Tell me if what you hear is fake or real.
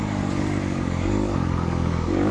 fake